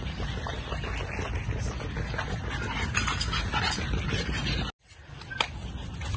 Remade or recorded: recorded